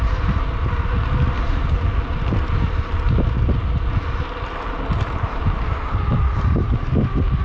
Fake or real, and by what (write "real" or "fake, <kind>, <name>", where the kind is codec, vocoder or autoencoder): real